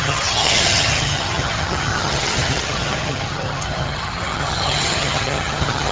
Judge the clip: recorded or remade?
remade